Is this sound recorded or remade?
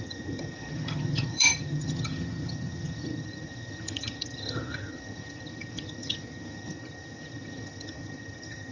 remade